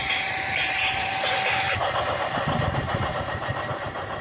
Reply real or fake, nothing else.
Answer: fake